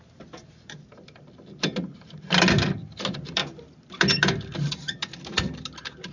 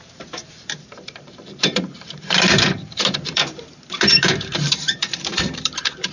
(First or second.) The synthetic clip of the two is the second